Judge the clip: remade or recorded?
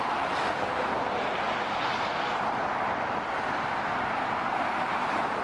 recorded